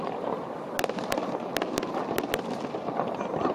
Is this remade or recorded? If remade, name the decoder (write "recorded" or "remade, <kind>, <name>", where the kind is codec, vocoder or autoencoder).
recorded